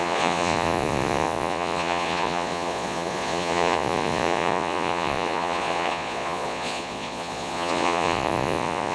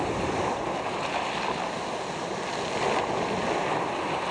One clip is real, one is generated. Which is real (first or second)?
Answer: second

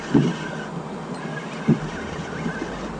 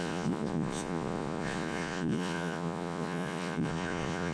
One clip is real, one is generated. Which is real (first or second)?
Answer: first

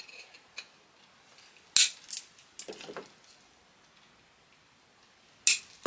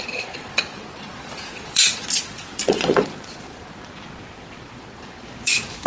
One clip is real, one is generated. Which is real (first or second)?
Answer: first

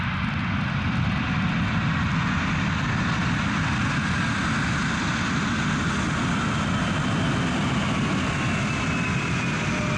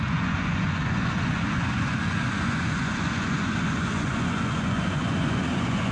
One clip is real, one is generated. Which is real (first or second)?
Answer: first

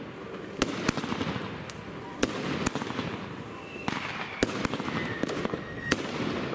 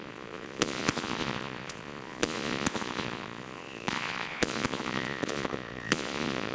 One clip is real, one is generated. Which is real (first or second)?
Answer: first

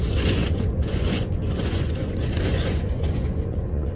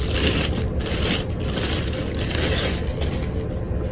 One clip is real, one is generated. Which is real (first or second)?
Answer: second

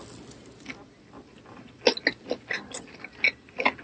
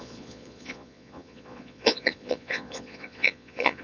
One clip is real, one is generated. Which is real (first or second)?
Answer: first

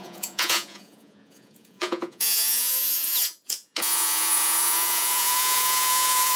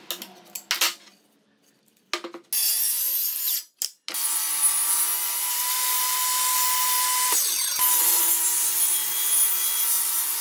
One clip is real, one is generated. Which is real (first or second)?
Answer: second